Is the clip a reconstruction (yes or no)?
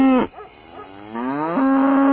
no